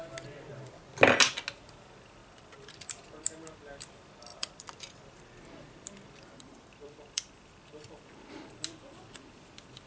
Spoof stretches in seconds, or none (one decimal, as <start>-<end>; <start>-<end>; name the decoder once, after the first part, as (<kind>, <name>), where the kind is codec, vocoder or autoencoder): 2.2-3.2 (vocoder, BigVGAN v2); 4.3-8.3